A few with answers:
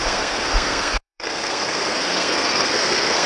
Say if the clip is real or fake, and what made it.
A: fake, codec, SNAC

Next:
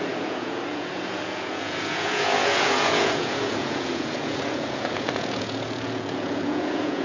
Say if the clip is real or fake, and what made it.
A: fake, vocoder, Vocos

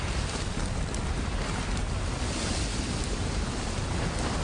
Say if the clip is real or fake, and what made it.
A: real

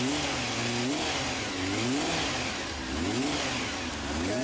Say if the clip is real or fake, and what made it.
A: real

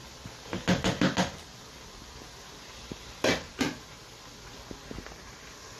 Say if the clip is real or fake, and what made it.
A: real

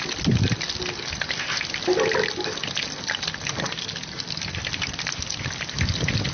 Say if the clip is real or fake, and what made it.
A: real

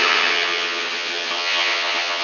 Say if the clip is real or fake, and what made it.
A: fake, vocoder, HiFi-GAN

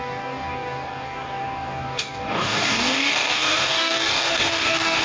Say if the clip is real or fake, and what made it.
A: fake, codec, DAC